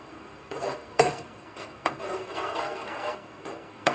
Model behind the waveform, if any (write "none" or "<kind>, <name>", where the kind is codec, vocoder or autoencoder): codec, SNAC